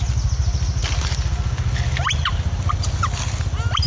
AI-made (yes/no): no